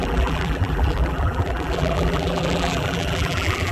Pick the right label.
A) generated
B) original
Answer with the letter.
A